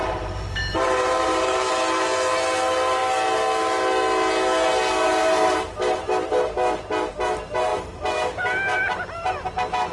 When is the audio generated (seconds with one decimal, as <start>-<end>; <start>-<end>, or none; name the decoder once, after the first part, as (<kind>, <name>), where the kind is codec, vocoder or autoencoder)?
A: 0.0-1.7 (vocoder, BigVGAN v2); 7.7-9.5